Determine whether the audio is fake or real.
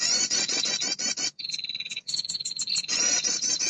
fake